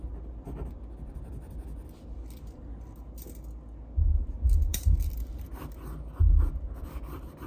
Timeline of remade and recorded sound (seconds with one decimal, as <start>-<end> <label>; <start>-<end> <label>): 0.0-4.7 recorded; 4.7-5.5 remade; 5.5-7.5 recorded